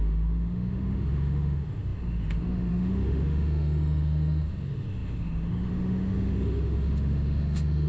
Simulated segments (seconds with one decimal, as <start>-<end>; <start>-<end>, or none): 0.0-7.9